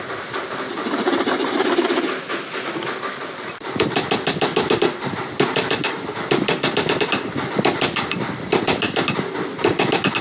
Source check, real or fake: real